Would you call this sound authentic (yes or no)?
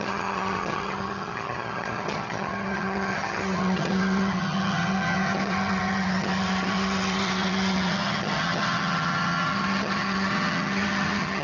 no